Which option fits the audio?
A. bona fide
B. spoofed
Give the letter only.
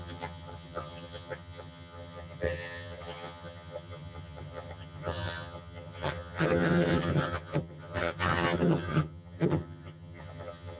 B